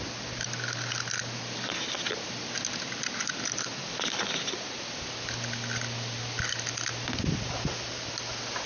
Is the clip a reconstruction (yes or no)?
no